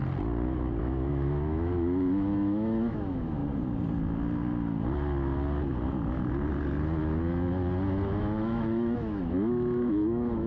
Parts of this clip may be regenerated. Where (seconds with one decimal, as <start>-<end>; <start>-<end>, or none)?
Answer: 0.8-3.4; 8.2-10.5